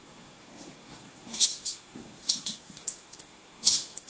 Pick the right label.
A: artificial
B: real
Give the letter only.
A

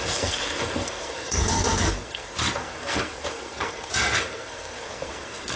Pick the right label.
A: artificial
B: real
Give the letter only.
A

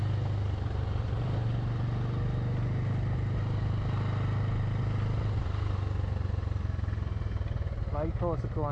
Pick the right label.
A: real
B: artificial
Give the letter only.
A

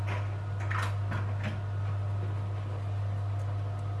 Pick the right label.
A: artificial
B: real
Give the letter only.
B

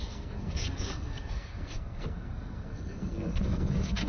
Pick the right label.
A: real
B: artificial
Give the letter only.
B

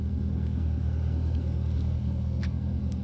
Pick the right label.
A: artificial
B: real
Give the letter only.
A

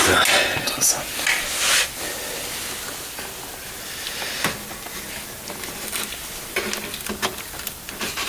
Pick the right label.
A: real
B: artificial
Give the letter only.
A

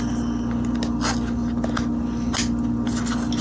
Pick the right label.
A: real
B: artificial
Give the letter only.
A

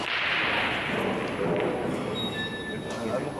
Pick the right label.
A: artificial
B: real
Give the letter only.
B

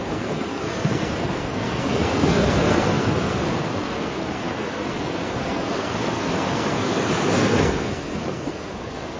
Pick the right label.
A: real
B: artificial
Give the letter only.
B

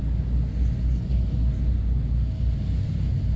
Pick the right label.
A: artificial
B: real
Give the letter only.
B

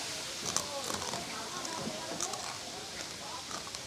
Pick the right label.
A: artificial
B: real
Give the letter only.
B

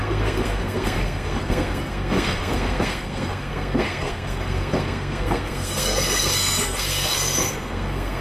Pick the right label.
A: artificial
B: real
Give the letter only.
A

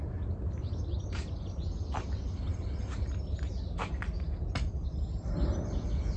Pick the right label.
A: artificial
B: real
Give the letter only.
B